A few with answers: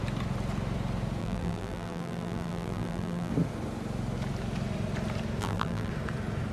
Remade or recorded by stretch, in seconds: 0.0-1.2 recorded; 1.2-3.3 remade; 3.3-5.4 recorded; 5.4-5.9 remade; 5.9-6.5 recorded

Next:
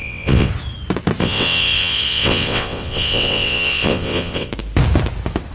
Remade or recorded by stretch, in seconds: 0.0-0.5 remade; 0.5-1.2 recorded; 1.2-4.5 remade; 4.5-5.5 recorded

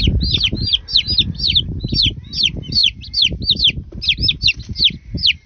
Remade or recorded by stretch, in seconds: 0.0-5.5 recorded

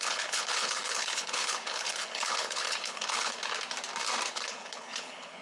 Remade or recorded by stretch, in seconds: 0.0-3.4 remade; 3.4-4.3 recorded; 4.3-5.4 remade

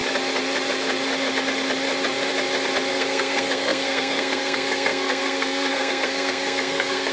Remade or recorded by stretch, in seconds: 0.0-2.9 recorded; 2.9-7.1 remade